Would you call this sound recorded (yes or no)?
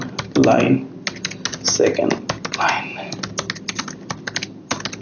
yes